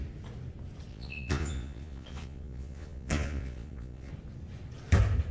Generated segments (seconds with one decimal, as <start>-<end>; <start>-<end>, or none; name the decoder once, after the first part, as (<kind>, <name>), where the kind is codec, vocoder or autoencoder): 0.9-4.1 (vocoder, Vocos)